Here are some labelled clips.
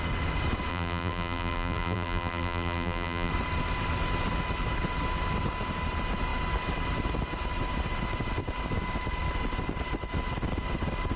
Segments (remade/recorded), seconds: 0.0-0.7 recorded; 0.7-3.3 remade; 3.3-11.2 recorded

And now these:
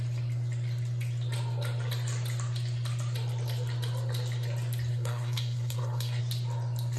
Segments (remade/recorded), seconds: 0.0-4.9 recorded; 4.9-6.2 remade; 6.2-7.0 recorded

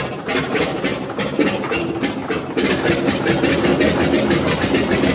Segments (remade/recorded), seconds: 0.0-3.7 remade; 3.7-4.2 recorded; 4.2-5.1 remade